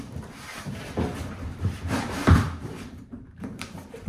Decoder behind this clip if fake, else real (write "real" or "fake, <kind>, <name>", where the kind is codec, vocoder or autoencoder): fake, vocoder, BigVGAN v2